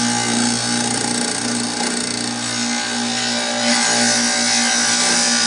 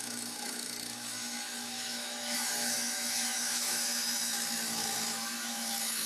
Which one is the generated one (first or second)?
second